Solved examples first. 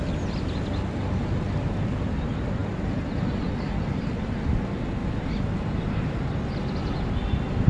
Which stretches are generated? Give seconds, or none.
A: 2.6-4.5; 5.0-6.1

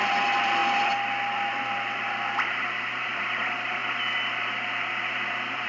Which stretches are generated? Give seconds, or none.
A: 0.0-3.8; 4.9-5.7

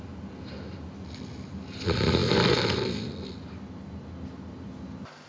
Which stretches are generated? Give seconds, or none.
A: none

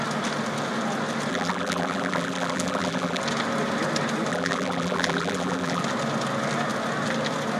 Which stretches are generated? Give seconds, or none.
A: 1.3-3.2; 4.3-5.8

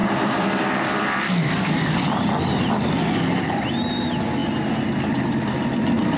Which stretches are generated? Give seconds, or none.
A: 0.0-3.7

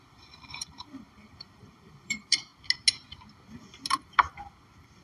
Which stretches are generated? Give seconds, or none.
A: 0.0-2.5

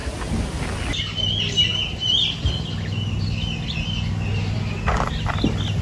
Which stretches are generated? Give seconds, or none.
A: 0.0-0.6

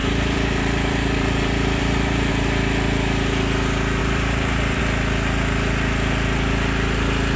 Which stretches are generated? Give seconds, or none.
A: 0.0-2.3; 4.0-4.8